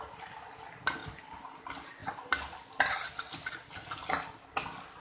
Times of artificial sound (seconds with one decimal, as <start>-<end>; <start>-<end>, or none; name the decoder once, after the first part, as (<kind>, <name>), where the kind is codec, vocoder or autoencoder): none